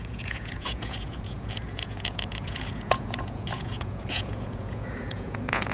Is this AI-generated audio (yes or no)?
yes